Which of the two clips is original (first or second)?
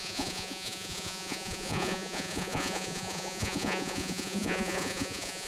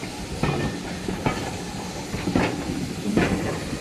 second